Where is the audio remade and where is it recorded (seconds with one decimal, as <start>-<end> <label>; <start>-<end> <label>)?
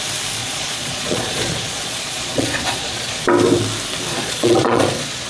0.0-0.4 recorded; 0.4-3.2 remade; 3.2-4.1 recorded; 4.1-5.3 remade